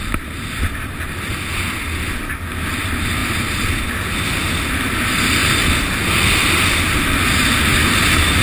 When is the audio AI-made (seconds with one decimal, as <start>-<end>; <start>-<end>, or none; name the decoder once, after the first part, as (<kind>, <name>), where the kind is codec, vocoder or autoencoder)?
none